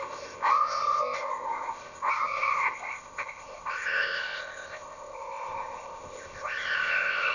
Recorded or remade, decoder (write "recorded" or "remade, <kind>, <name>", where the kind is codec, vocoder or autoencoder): remade, codec, ZipCodec